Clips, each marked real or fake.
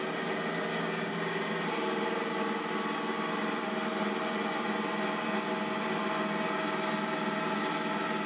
real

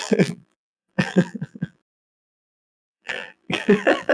fake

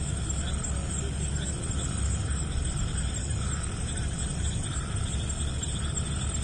real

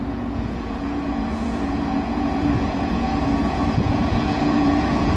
fake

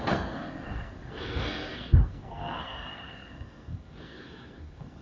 fake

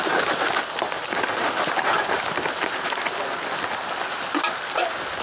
real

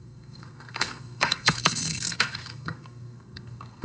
fake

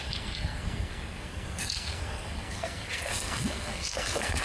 fake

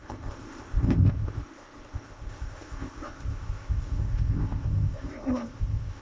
fake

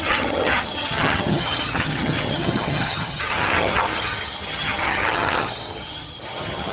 fake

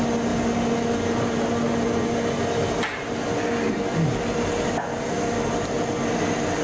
real